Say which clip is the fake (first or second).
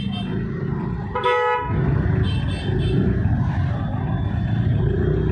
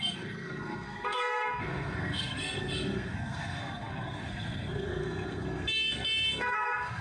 second